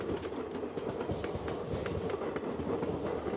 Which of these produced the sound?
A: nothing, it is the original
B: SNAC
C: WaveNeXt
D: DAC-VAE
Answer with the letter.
A